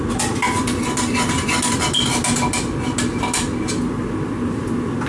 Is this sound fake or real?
real